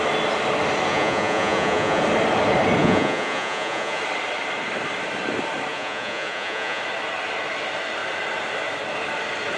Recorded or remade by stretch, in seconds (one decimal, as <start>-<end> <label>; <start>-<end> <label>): 0.0-0.9 recorded; 0.9-2.0 remade; 2.0-2.8 recorded; 2.8-4.0 remade; 4.0-5.7 recorded; 5.7-6.8 remade; 6.8-9.6 recorded